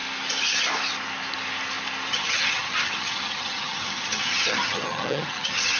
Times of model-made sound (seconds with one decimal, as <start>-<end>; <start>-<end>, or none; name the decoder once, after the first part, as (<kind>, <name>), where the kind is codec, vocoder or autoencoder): 2.1-5.8 (vocoder, HiFi-GAN)